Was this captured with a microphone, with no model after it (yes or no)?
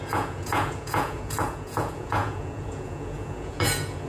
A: no